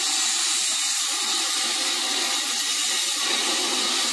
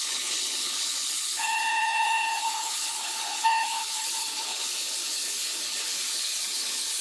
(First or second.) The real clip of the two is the first